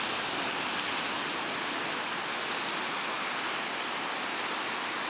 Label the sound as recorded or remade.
recorded